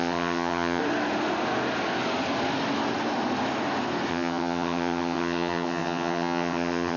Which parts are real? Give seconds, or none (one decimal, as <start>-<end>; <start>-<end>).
0.8-4.1